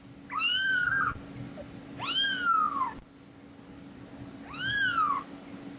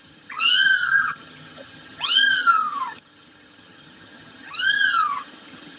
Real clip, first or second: first